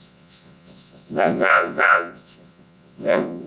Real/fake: fake